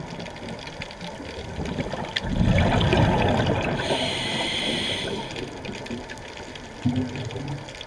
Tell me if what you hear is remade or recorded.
recorded